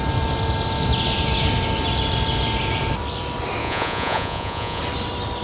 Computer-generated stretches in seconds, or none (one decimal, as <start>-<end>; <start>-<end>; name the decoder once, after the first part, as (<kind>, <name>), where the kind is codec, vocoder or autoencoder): 3.6-4.8 (vocoder, Vocos)